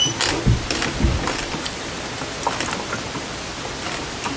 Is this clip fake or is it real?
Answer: real